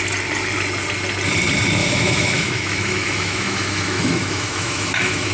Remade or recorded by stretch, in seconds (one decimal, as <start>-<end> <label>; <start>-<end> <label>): 0.0-1.8 recorded; 1.8-5.3 remade